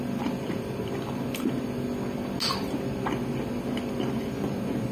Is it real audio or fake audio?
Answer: real